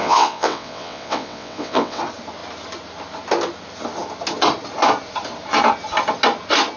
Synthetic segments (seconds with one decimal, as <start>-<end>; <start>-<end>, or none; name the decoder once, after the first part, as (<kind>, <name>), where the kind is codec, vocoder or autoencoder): 0.0-2.0 (vocoder, WaveNeXt)